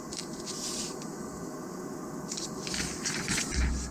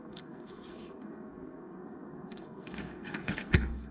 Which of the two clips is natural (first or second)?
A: first